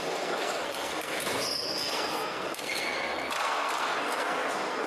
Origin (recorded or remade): remade